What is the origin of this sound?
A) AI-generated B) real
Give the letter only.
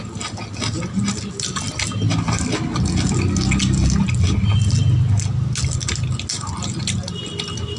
B